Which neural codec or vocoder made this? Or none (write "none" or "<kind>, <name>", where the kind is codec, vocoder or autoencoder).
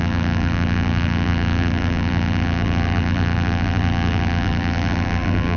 vocoder, BigVGAN v2